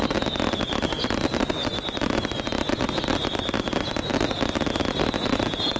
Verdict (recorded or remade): recorded